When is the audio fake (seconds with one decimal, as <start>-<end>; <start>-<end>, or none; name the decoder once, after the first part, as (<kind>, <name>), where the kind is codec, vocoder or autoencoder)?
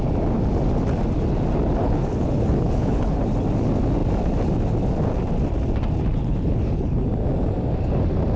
1.8-3.2 (codec, HILCodec); 6.2-6.9